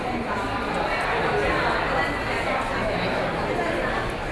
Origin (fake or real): real